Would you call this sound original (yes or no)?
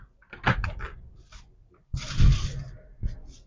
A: yes